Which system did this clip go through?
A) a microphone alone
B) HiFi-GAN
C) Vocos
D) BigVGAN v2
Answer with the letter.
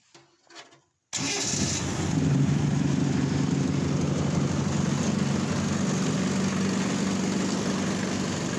A